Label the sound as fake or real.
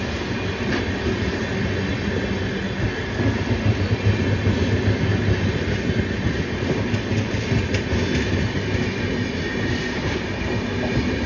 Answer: real